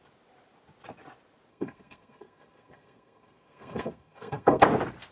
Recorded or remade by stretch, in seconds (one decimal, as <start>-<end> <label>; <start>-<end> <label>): 0.0-1.5 recorded; 1.5-4.6 remade; 4.6-5.1 recorded

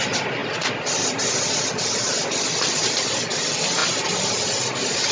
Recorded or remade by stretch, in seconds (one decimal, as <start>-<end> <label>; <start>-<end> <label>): 0.0-5.1 recorded